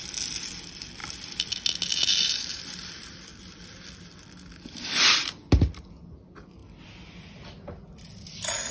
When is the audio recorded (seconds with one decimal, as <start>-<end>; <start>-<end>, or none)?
0.0-8.7